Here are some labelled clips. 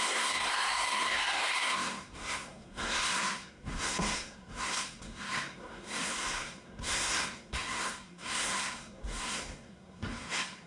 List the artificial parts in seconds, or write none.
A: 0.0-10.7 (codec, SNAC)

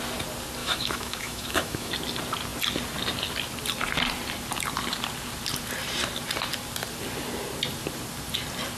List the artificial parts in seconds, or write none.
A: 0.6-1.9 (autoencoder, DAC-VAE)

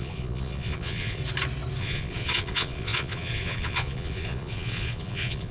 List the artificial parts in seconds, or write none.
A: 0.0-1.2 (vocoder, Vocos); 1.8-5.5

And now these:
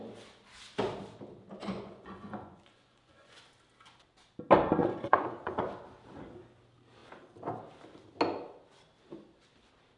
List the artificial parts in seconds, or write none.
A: 1.6-3.4 (vocoder, Vocos); 4.8-5.6

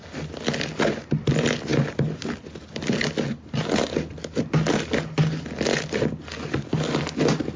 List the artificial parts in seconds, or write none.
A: none